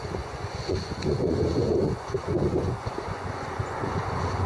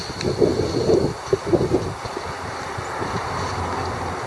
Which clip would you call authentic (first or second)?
second